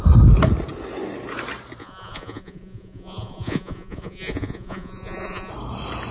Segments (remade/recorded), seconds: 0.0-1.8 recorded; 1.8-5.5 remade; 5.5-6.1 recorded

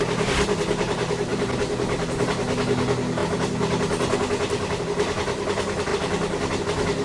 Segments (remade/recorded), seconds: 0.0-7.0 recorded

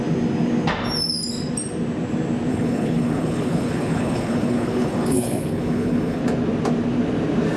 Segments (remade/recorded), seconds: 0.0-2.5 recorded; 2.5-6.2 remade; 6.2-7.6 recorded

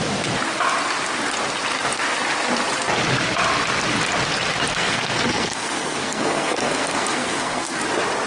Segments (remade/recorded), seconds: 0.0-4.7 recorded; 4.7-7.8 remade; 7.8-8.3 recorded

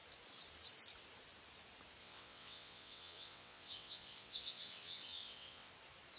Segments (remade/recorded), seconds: 0.0-2.0 recorded; 2.0-5.7 remade; 5.7-6.2 recorded

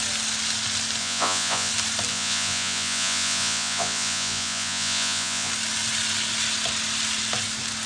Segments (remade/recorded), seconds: 0.0-1.0 recorded; 1.0-1.7 remade; 1.7-2.1 recorded; 2.1-5.5 remade; 5.5-7.9 recorded